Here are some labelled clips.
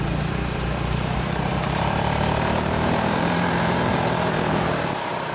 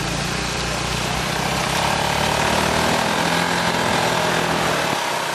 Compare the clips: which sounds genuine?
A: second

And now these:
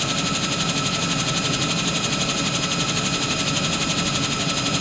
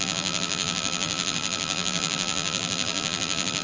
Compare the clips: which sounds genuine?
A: first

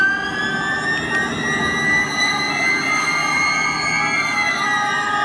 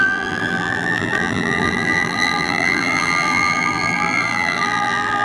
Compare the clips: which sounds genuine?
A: first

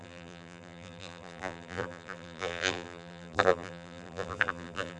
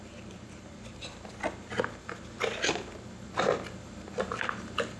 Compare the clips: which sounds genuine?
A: second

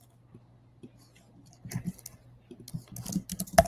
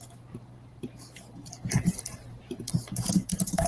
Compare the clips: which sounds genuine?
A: first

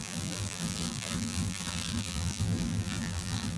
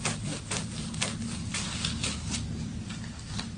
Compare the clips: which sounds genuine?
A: second